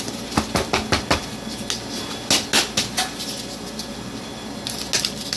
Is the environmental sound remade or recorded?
recorded